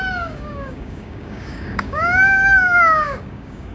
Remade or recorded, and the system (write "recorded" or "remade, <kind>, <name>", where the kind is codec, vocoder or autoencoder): remade, codec, DAC